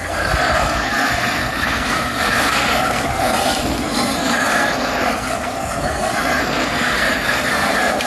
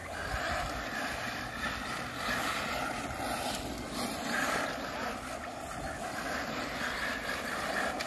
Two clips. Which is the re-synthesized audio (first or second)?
first